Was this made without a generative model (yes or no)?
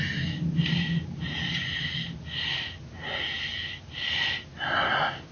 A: yes